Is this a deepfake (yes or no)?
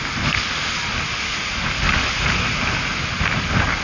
no